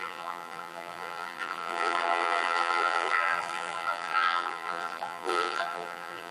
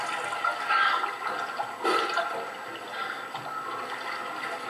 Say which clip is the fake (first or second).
first